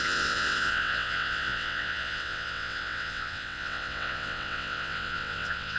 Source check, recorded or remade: remade